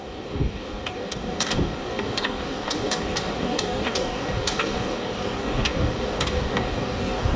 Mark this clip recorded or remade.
remade